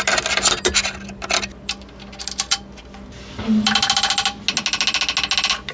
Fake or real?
real